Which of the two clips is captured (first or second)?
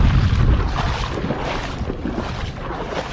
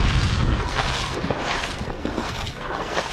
first